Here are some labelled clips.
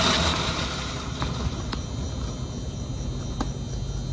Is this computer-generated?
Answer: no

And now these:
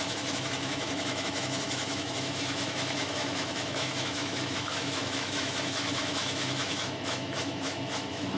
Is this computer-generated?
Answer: yes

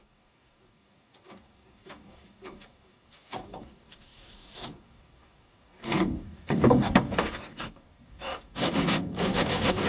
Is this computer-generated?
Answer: yes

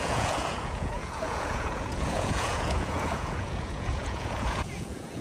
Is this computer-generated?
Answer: yes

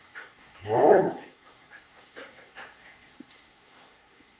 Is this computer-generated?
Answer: yes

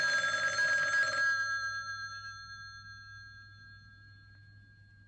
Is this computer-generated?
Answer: no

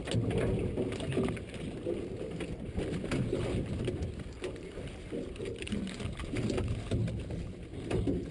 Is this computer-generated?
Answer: no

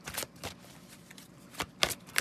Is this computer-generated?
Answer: no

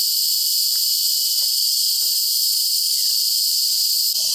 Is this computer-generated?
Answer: yes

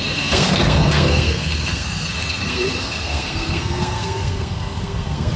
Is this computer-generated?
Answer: yes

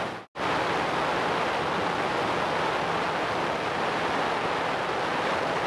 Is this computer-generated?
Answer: no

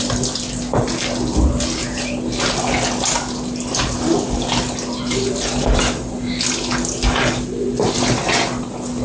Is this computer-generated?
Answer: no